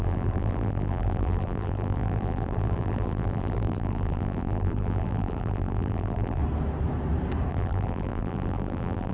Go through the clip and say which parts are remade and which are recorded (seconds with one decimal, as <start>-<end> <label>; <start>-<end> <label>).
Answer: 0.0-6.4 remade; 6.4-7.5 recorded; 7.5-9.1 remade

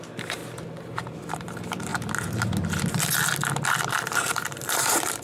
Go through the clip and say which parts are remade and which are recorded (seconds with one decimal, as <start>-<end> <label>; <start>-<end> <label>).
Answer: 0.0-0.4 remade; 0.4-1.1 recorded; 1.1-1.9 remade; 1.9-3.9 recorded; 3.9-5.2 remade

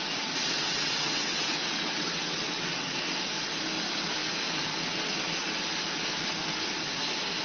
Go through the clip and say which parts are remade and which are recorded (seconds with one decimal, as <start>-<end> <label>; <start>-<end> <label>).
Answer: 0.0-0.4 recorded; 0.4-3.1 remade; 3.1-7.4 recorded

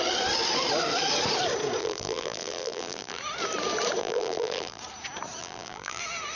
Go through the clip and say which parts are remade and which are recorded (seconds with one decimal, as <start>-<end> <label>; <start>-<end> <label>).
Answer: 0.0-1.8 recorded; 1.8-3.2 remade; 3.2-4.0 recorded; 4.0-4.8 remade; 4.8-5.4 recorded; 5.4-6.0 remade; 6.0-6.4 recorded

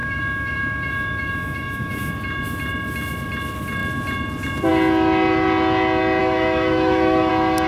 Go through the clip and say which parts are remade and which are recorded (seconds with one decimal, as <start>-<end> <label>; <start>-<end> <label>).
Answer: 0.0-2.1 remade; 2.1-6.2 recorded; 6.2-7.3 remade; 7.3-7.7 recorded